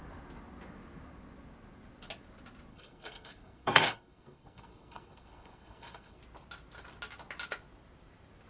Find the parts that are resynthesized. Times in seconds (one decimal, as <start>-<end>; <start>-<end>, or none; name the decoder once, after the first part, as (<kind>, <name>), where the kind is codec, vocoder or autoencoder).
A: 2.7-6.2 (codec, SNAC)